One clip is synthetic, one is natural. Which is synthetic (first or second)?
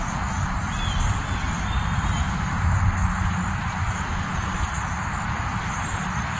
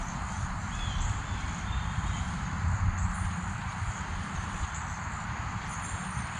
second